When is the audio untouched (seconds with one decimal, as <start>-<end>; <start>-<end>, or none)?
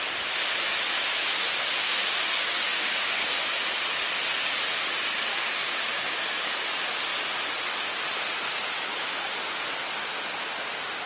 0.0-1.8; 3.4-5.3; 6.5-11.1